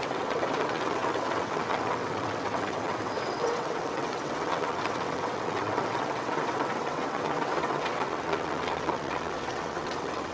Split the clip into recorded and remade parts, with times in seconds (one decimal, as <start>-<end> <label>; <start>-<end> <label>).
0.0-10.3 remade